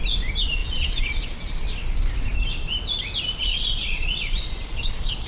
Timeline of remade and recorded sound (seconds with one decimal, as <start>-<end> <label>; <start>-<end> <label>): 0.0-0.6 recorded; 0.6-1.4 remade; 1.4-3.5 recorded; 3.5-5.3 remade